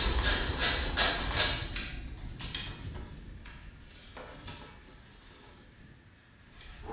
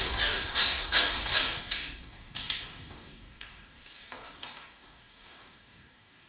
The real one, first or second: first